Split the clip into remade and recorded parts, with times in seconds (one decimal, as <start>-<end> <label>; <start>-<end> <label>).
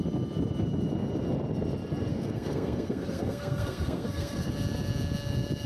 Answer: 0.0-2.1 recorded; 2.1-4.5 remade; 4.5-5.7 recorded